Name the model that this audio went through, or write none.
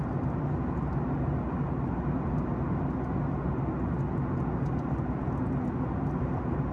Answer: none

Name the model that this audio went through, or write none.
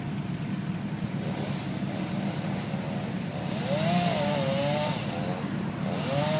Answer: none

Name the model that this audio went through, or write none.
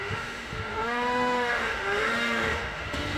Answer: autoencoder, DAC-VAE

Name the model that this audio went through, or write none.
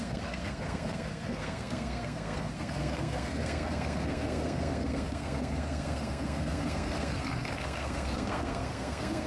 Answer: codec, SNAC